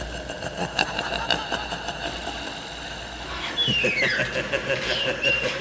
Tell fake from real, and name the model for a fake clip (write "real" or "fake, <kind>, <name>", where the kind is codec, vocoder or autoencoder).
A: real